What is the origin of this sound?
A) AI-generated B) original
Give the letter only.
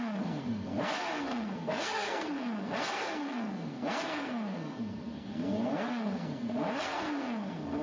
A